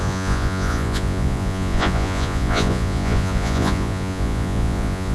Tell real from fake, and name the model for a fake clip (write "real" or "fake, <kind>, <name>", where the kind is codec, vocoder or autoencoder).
fake, vocoder, Vocos